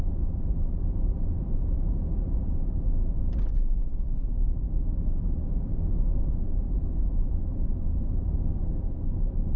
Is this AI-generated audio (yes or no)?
yes